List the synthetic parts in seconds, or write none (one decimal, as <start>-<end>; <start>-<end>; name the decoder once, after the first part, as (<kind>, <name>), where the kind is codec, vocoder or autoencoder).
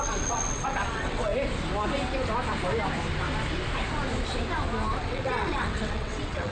0.0-1.3 (vocoder, WaveNeXt); 5.0-6.5